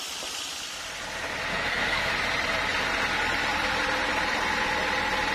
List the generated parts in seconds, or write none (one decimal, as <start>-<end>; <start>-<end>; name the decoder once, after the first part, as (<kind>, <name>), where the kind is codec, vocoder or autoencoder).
1.6-2.1 (codec, SNAC)